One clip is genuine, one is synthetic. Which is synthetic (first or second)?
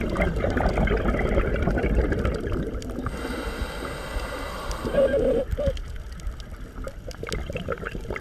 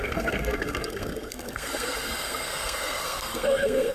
second